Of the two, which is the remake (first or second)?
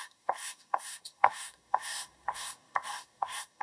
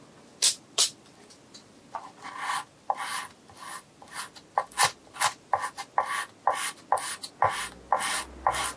first